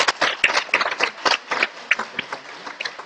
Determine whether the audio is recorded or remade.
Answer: recorded